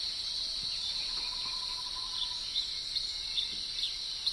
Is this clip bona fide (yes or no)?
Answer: yes